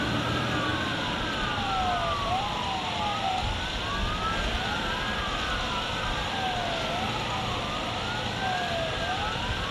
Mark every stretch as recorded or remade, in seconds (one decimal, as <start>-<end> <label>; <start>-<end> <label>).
0.0-9.7 recorded